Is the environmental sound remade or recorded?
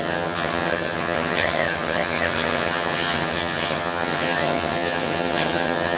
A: remade